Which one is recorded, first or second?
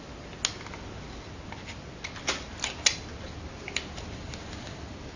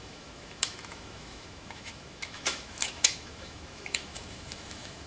first